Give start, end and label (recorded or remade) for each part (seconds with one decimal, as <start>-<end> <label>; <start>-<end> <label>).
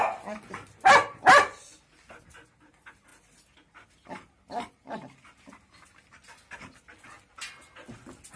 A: 0.0-8.4 recorded